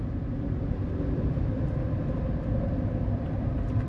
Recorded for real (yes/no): no